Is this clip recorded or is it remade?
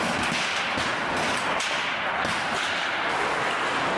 recorded